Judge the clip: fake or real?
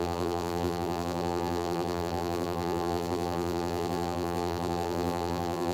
fake